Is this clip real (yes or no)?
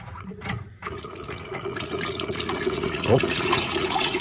no